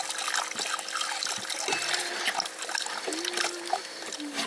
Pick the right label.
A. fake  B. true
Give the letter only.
B